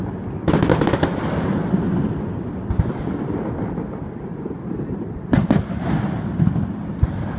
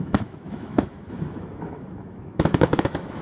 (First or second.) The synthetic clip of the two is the second